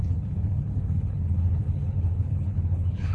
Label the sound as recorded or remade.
remade